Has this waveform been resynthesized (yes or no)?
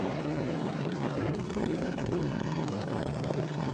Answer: yes